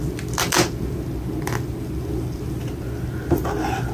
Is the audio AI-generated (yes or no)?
no